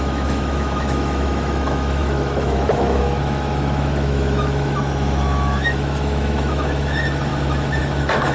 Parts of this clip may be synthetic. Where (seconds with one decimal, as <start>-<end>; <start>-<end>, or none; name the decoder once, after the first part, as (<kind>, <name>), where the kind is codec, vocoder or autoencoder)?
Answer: 0.0-7.3 (autoencoder, DAC-VAE); 7.8-8.3